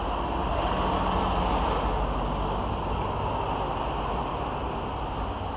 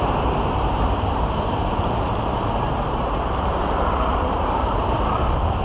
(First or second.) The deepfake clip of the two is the second